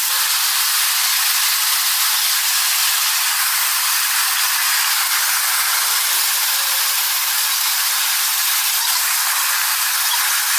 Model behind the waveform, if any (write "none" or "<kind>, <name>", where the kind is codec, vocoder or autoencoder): none